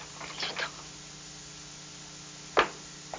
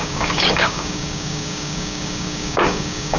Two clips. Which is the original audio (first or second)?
first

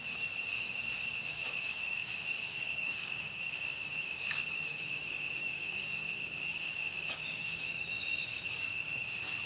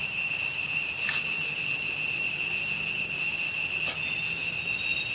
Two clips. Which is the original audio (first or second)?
second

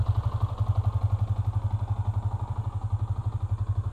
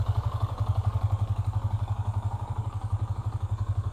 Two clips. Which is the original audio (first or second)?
first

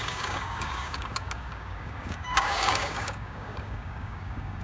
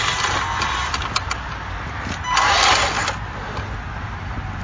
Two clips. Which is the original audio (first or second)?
second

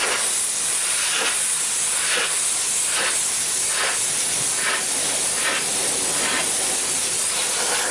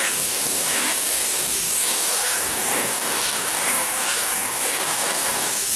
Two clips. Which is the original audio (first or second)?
first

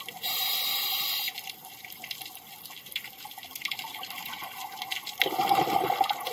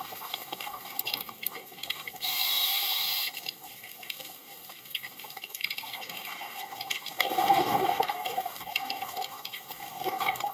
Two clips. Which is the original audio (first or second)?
first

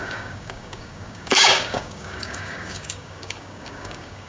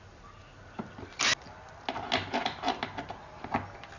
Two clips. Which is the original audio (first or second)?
second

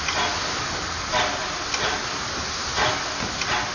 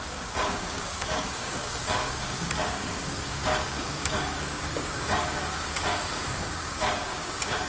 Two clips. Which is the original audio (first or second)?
first